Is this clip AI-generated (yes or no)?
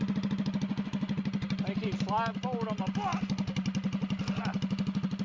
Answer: no